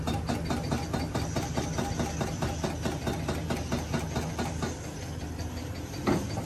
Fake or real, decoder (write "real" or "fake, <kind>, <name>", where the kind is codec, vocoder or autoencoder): real